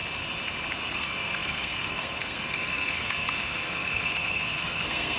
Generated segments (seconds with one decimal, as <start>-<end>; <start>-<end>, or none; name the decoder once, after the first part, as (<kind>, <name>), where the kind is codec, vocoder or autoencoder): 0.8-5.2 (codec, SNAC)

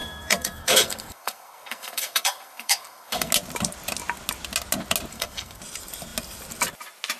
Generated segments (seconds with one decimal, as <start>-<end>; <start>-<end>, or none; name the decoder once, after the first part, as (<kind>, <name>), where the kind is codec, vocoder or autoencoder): 0.0-3.3 (codec, SNAC); 5.1-5.6

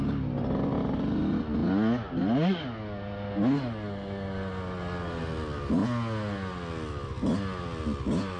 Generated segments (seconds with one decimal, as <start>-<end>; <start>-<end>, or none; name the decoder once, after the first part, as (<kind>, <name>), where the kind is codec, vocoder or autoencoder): none